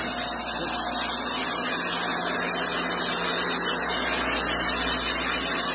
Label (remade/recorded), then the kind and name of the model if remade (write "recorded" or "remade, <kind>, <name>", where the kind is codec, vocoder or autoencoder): recorded